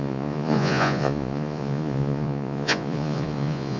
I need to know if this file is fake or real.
fake